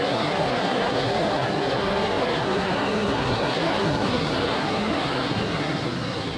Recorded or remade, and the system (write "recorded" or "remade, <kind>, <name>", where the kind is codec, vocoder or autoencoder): remade, codec, SNAC